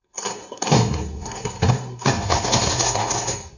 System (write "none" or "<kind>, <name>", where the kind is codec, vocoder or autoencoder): codec, SNAC